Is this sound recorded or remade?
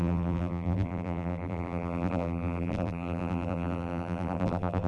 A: remade